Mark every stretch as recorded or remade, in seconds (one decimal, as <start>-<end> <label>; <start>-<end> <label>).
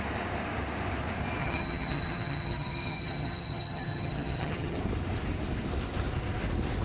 0.0-1.4 recorded; 1.4-4.8 remade; 4.8-6.8 recorded